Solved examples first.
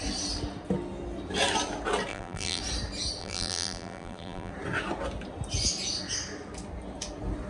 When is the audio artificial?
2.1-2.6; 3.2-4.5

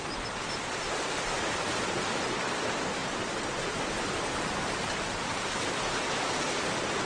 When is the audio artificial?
0.0-1.6

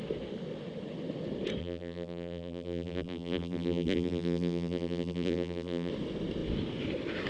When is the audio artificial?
1.6-5.9

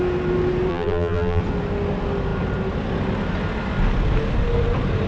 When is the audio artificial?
0.7-1.4

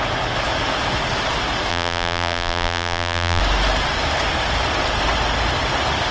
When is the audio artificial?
1.7-3.4

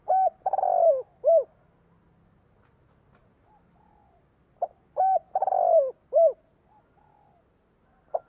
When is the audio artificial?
none